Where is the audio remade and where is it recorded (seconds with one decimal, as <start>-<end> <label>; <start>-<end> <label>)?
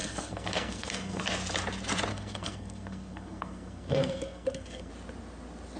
0.0-1.2 remade; 1.2-2.1 recorded; 2.1-4.9 remade; 4.9-5.8 recorded